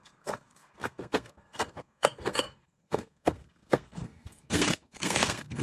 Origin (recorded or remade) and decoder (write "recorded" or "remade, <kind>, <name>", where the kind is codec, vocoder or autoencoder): remade, codec, SNAC